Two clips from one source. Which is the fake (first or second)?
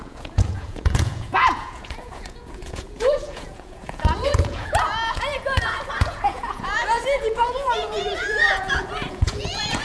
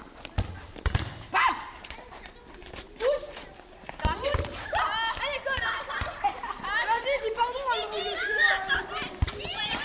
first